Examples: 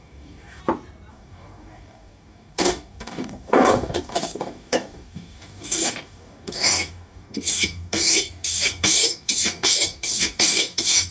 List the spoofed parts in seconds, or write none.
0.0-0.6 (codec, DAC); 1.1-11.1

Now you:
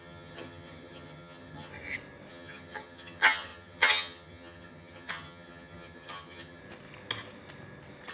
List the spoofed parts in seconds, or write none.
0.0-1.7 (vocoder, HiFi-GAN); 2.3-6.6

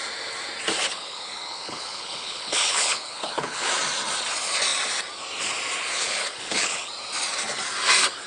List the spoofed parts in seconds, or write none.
0.9-3.7 (codec, HILCodec); 6.0-6.9

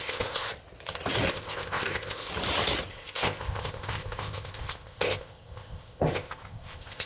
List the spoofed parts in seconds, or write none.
0.0-0.5 (codec, ZipCodec); 1.3-2.3; 2.9-7.1

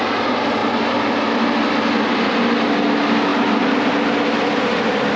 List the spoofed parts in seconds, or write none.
none